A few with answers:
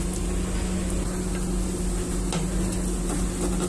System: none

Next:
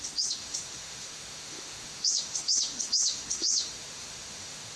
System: autoencoder, DAC-VAE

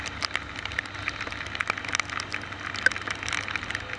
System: none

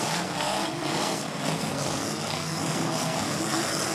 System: codec, SNAC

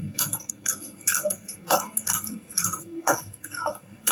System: codec, SNAC